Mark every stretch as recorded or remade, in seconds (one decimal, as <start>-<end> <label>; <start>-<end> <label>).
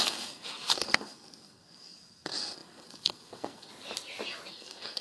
0.0-3.7 remade; 3.7-4.5 recorded; 4.5-5.0 remade